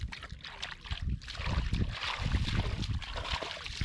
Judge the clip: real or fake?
real